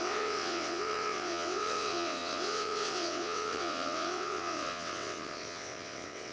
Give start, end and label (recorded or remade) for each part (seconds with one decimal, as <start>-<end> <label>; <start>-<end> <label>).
0.0-6.3 remade